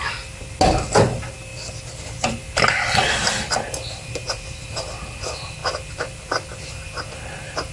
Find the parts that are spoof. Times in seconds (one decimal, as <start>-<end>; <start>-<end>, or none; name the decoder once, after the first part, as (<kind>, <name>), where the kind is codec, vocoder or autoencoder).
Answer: none